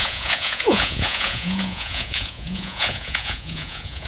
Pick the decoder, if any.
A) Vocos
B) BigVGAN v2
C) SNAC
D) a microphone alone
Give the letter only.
A